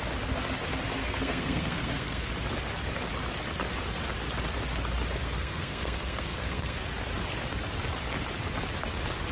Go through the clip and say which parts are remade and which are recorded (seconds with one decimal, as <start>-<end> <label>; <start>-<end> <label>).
0.0-1.0 recorded; 1.0-2.3 remade; 2.3-5.2 recorded; 5.2-6.8 remade; 6.8-9.3 recorded